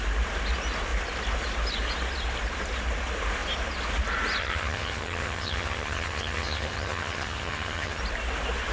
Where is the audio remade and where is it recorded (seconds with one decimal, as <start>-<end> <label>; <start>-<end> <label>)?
0.0-4.4 recorded; 4.4-8.0 remade; 8.0-8.7 recorded